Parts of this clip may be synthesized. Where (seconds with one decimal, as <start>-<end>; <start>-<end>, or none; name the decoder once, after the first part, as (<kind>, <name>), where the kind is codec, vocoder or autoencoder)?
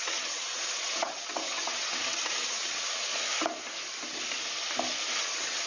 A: 0.0-3.1 (vocoder, WaveNeXt); 5.2-5.7